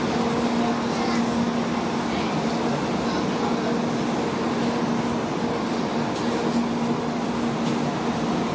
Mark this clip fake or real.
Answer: real